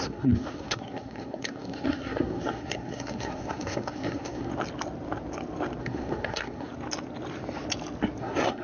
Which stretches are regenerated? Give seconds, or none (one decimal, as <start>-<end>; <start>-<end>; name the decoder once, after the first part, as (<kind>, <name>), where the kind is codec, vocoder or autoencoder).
0.0-4.5 (codec, SNAC); 5.8-6.7; 8.2-8.6